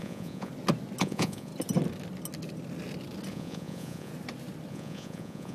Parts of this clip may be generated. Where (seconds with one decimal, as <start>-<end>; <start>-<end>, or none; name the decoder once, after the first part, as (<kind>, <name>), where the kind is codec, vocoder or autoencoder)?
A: 0.0-0.5 (vocoder, Vocos); 1.0-1.5; 3.3-4.1; 4.7-5.5